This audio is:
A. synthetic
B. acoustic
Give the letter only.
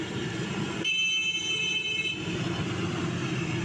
B